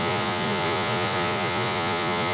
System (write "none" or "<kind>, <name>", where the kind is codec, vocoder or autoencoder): vocoder, Vocos